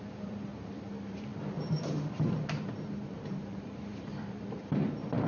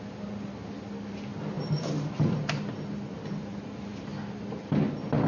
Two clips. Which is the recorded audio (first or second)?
second